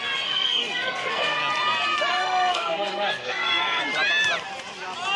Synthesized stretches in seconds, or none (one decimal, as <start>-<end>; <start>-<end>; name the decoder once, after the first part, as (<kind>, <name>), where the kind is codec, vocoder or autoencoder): 0.0-1.4 (codec, SNAC); 2.1-3.8